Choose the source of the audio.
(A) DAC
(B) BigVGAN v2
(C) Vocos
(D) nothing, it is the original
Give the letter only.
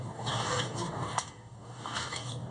A